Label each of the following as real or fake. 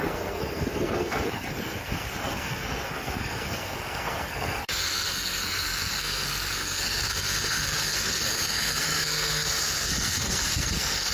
fake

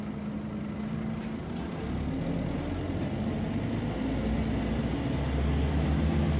real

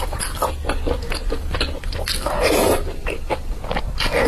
real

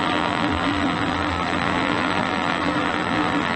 fake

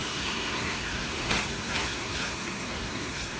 fake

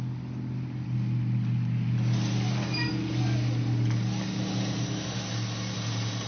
real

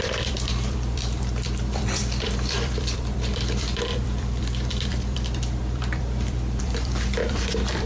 fake